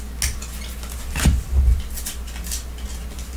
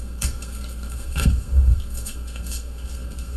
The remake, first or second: second